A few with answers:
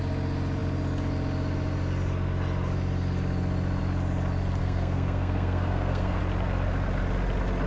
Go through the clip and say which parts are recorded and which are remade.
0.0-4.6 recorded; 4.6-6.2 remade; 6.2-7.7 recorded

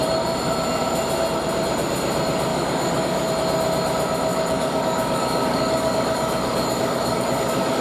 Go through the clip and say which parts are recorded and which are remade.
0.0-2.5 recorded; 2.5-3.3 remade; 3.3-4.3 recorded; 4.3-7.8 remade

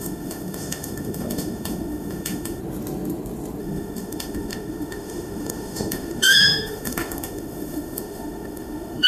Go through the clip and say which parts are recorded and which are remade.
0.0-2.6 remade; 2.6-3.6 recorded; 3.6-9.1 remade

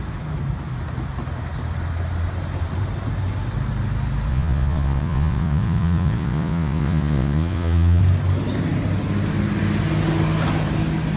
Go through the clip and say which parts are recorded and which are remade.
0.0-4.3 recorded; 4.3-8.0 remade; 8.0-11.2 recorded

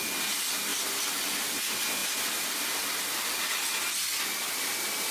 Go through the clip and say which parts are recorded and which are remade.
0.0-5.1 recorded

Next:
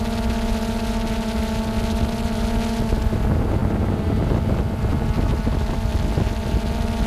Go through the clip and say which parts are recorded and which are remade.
0.0-7.1 recorded

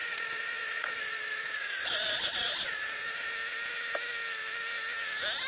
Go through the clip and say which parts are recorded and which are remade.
0.0-3.3 remade; 3.3-5.5 recorded